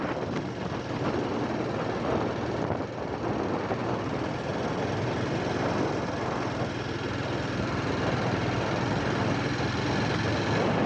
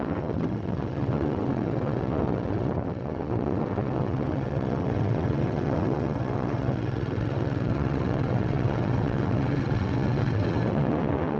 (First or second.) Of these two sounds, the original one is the first